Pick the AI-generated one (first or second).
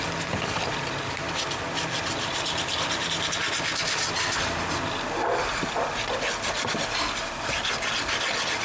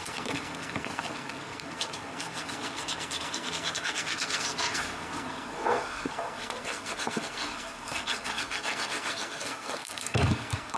second